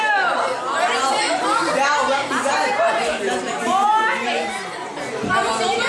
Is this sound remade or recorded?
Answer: recorded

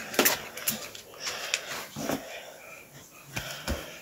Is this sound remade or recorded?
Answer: recorded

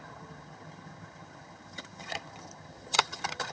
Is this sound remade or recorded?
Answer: remade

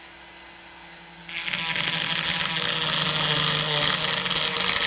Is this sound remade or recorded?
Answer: recorded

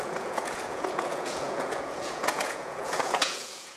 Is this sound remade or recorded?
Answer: remade